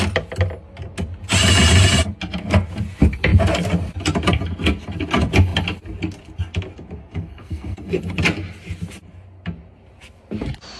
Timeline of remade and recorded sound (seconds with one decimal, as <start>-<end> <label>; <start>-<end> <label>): 0.0-7.0 recorded; 7.0-8.0 remade; 8.0-10.8 recorded